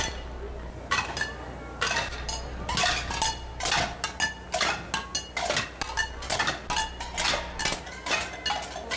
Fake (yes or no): no